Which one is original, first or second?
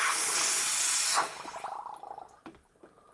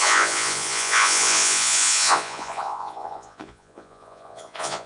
first